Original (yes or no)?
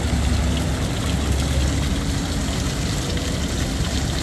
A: yes